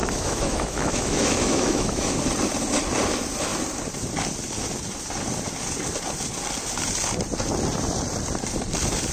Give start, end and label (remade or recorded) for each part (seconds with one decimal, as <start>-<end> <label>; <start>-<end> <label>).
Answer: 0.0-2.1 remade; 2.1-9.1 recorded